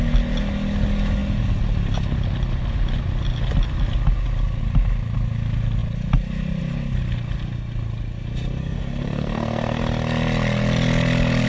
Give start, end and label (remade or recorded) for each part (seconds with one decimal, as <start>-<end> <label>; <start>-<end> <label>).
0.0-8.6 recorded; 8.6-9.8 remade; 9.8-11.5 recorded